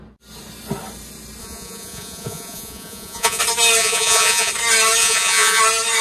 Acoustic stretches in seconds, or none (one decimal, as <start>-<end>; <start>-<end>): 0.0-1.4; 3.4-3.8; 4.5-5.0; 5.6-6.0